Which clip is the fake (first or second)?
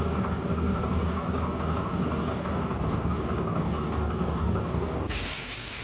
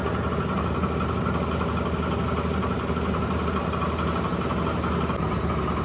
first